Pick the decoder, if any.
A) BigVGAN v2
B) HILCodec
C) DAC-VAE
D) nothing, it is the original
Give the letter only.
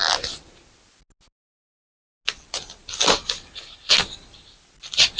D